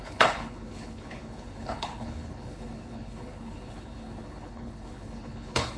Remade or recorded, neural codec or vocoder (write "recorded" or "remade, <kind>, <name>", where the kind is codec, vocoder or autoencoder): remade, codec, HILCodec